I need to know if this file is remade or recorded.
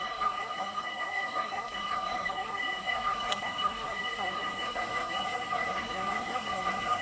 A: remade